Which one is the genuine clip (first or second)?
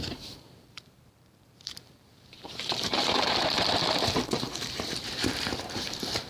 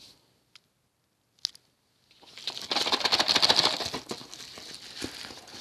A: second